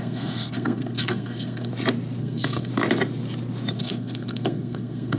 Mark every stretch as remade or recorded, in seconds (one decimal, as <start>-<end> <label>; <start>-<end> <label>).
0.0-1.7 remade; 1.7-2.2 recorded; 2.2-2.7 remade; 2.7-3.7 recorded; 3.7-5.2 remade